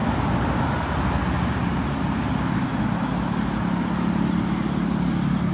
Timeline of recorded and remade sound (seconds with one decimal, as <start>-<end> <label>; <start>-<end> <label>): 0.0-5.5 recorded